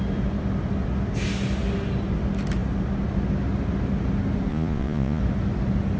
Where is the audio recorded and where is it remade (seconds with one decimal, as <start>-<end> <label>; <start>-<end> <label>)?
0.0-4.5 recorded; 4.5-5.2 remade; 5.2-6.0 recorded